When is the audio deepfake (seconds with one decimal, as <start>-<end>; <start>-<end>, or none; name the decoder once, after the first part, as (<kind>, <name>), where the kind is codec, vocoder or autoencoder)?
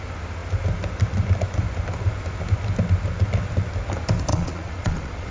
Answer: 4.3-5.3 (vocoder, Vocos)